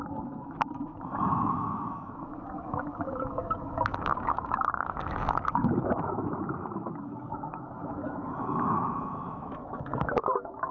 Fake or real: fake